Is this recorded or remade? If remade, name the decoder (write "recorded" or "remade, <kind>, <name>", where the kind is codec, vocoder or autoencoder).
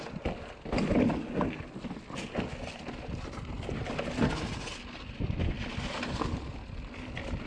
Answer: recorded